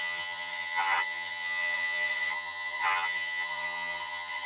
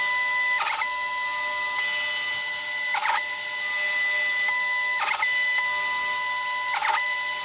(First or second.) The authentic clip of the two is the second